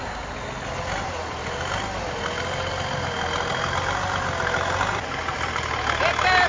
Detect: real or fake real